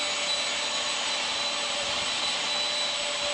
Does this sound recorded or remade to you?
recorded